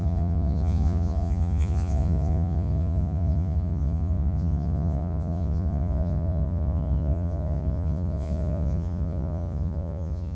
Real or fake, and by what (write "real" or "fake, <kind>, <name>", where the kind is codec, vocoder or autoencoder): fake, vocoder, Vocos